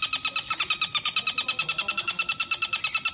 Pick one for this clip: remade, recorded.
recorded